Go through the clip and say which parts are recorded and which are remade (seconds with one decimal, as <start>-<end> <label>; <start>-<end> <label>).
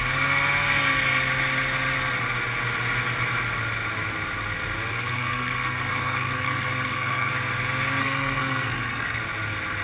0.0-4.9 recorded; 4.9-7.3 remade; 7.3-8.0 recorded; 8.0-9.2 remade; 9.2-9.8 recorded